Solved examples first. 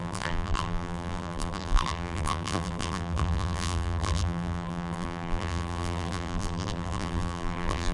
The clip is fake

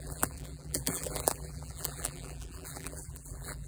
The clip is fake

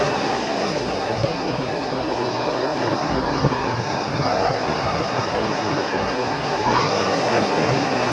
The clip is fake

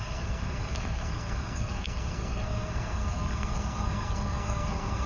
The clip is fake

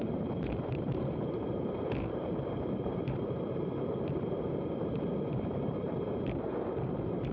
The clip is fake